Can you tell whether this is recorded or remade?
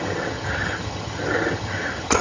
remade